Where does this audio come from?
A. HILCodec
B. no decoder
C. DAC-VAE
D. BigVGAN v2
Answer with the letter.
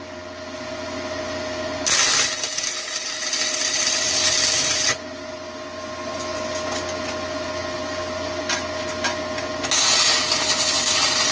B